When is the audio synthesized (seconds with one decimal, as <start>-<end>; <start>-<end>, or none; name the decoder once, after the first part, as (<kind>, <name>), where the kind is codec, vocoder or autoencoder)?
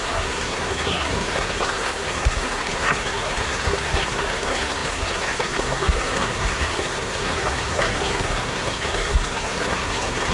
0.0-10.3 (codec, SNAC)